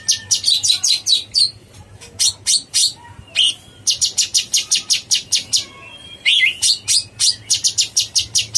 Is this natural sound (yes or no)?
yes